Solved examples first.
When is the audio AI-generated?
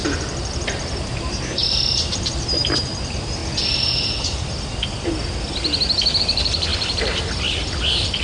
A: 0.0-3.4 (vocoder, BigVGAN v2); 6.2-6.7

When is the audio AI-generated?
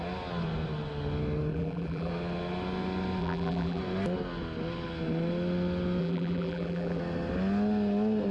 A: 1.5-2.1 (vocoder, BigVGAN v2); 3.2-3.8; 6.0-7.0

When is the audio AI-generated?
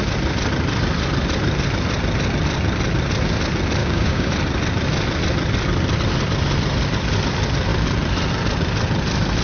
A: 3.8-4.3 (codec, DAC)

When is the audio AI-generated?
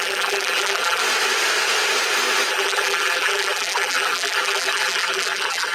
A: 0.0-1.0 (vocoder, BigVGAN v2); 2.5-5.7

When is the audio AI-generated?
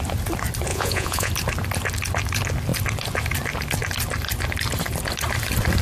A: 0.7-1.3 (vocoder, Vocos)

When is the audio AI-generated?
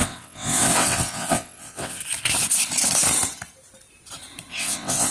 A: 0.0-2.0 (vocoder, WaveNeXt); 4.5-5.1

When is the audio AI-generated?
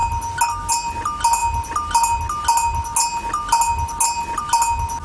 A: none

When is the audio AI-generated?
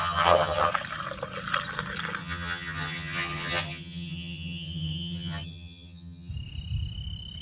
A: 0.0-0.7 (vocoder, HiFi-GAN); 2.2-6.3